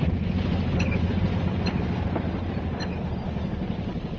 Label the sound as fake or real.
fake